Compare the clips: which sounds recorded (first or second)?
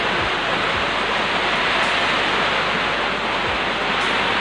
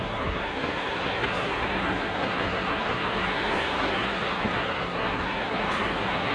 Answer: first